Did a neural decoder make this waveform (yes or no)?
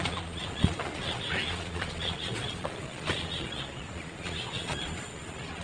yes